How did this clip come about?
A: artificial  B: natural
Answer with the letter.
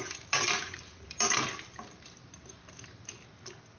B